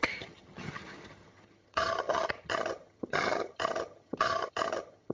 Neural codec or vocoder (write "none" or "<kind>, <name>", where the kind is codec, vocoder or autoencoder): vocoder, HiFi-GAN